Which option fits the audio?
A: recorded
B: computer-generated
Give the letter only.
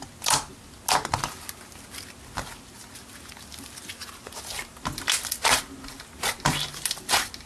A